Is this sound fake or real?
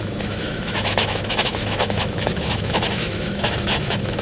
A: fake